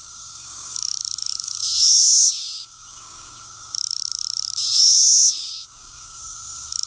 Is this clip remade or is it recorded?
remade